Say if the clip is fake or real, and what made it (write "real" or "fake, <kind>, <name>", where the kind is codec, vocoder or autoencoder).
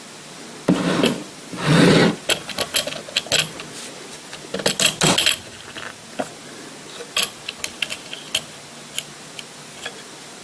real